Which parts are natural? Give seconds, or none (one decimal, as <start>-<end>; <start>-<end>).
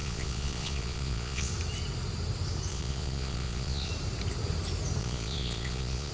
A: 1.5-2.7; 3.9-5.0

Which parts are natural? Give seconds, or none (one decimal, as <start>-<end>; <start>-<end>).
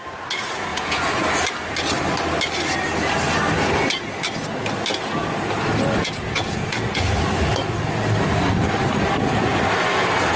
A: 0.0-0.7; 1.2-6.0; 7.1-10.4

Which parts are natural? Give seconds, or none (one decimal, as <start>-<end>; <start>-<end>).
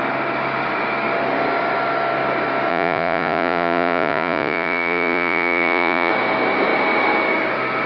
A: 0.0-2.7; 6.1-7.9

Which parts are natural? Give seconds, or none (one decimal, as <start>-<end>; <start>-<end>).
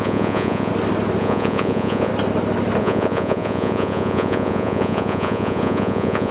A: 0.7-1.2; 2.1-2.8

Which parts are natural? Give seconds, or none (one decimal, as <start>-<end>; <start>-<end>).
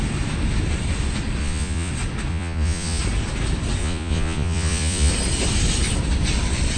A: 0.0-1.4; 1.9-2.3; 3.0-3.8; 5.1-6.8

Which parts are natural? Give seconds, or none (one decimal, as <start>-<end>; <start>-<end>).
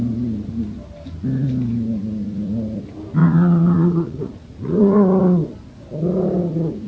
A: 0.0-3.2; 5.2-6.9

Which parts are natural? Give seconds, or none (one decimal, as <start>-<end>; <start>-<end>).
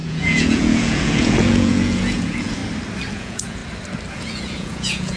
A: 2.6-3.1; 3.6-4.1